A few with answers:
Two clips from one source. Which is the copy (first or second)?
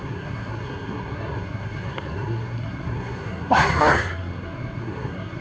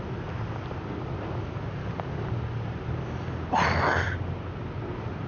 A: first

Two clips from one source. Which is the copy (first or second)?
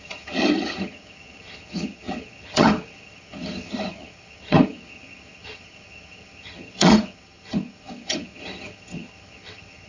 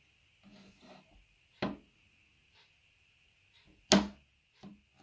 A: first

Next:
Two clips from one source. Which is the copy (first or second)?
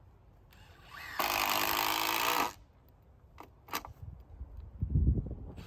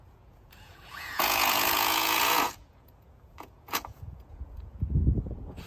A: second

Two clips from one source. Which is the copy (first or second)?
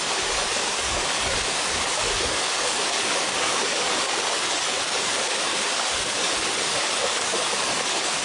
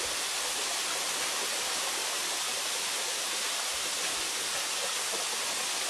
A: first